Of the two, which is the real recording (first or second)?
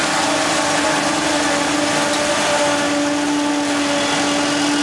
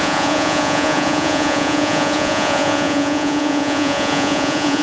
first